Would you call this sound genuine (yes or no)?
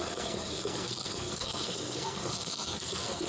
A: no